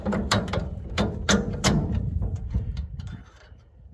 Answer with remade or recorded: remade